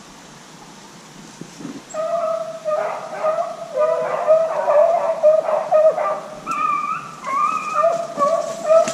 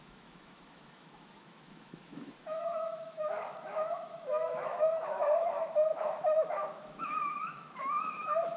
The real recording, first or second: first